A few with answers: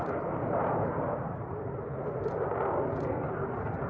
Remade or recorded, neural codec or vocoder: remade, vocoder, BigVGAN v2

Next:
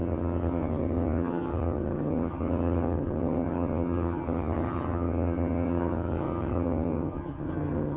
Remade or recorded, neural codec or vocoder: remade, vocoder, HiFi-GAN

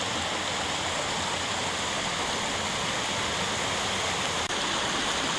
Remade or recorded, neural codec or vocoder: recorded